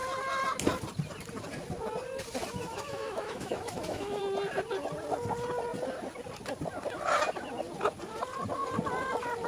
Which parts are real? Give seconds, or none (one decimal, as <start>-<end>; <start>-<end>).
0.0-2.6; 4.2-9.5